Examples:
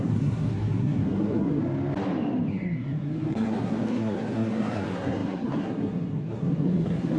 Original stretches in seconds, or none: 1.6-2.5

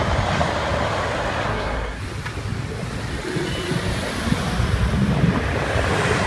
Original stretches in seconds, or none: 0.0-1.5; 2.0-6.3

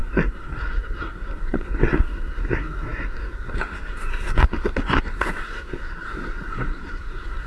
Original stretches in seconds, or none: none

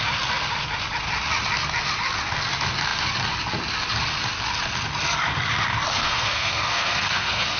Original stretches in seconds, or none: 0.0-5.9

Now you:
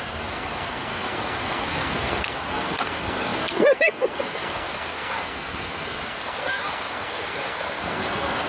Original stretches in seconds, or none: none